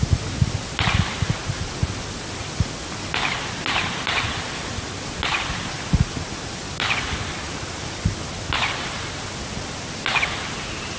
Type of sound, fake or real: real